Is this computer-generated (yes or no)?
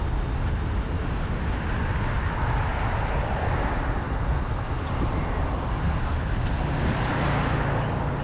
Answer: no